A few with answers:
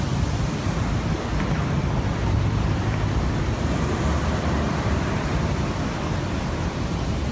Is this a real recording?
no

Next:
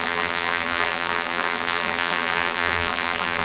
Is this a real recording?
no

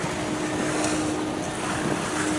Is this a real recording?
yes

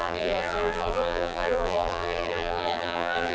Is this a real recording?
no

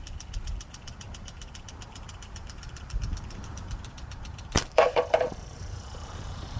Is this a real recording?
no